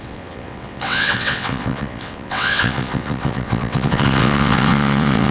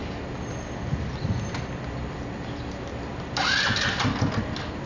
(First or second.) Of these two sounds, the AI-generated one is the first